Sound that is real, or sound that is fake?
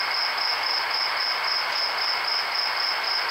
real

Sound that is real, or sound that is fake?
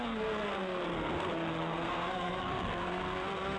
fake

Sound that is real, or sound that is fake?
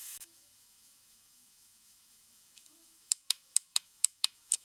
fake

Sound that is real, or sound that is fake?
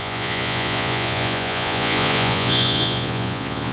fake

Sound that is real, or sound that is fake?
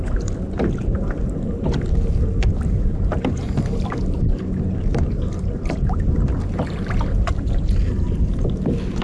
real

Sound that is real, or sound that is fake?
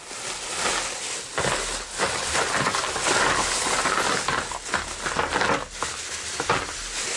real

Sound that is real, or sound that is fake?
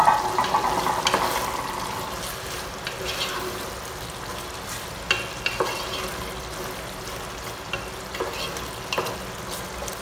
real